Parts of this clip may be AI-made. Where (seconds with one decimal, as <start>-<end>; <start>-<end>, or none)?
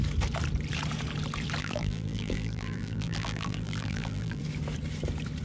1.6-4.4